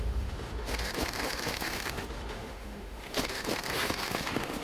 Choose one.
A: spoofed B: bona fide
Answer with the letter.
A